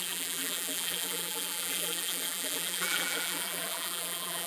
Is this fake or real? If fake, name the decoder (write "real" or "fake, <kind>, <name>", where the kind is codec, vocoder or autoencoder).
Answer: fake, vocoder, BigVGAN v2